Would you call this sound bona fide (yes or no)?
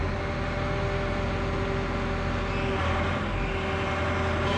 yes